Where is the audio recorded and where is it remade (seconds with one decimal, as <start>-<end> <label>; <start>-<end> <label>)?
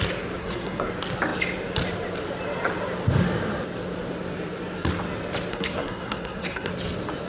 0.0-0.4 recorded; 0.4-0.9 remade; 0.9-5.5 recorded; 5.5-6.7 remade; 6.7-7.3 recorded